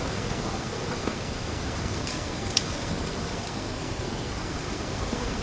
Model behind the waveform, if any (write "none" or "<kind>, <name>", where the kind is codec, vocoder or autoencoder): codec, SNAC